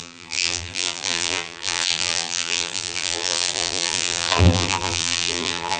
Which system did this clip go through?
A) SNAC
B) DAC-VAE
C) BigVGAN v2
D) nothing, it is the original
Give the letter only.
C